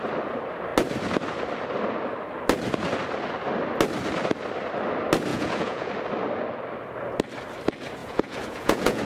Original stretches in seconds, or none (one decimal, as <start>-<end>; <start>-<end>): 0.0-5.3; 5.9-8.0